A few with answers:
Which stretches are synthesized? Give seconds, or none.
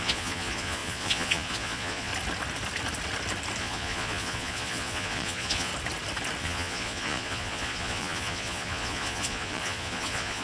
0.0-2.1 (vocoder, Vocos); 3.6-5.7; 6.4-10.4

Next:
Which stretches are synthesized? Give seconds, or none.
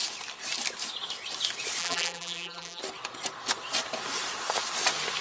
1.8-2.8 (vocoder, BigVGAN v2)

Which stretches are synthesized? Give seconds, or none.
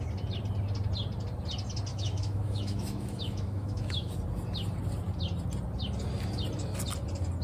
1.9-4.1 (autoencoder, DAC-VAE)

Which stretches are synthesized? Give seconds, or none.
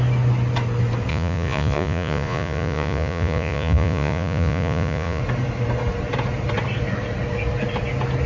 1.1-5.2 (vocoder, Vocos)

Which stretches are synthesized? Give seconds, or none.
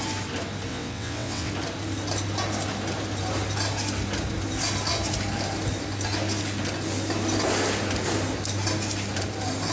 0.7-1.5 (vocoder, WaveNeXt)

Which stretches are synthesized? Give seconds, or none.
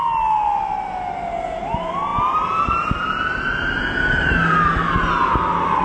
none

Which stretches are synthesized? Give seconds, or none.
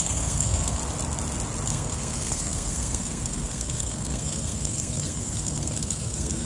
0.0-0.8 (codec, SNAC); 1.7-6.5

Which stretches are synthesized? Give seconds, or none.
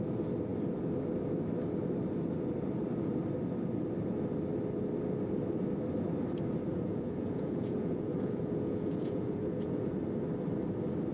6.7-9.9 (vocoder, Vocos)